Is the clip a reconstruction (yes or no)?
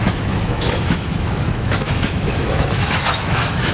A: yes